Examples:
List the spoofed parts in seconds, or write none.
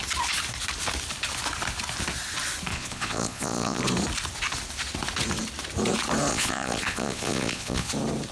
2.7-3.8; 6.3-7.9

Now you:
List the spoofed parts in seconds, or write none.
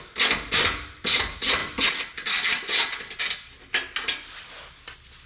none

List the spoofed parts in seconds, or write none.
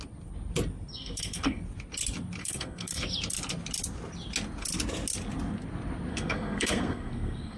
0.9-1.6; 2.4-3.0; 6.1-7.6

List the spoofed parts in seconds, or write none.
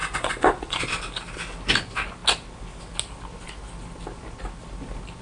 0.0-0.8